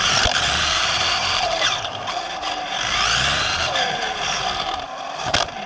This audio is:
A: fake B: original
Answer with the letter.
A